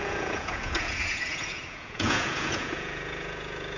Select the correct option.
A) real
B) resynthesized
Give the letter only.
B